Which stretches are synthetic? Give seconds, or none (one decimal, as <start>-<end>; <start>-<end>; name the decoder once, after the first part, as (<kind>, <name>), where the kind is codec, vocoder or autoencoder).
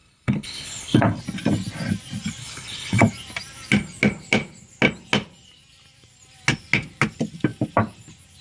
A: 0.0-1.2 (codec, HILCodec); 2.4-3.0